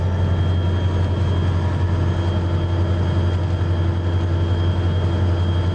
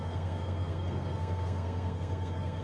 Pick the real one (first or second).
first